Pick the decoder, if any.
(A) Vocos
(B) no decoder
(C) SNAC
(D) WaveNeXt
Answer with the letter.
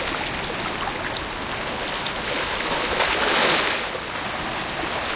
B